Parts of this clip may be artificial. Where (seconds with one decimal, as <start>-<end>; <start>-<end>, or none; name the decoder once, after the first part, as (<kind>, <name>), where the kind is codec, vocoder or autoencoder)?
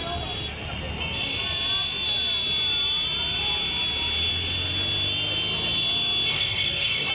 6.3-7.1 (codec, SNAC)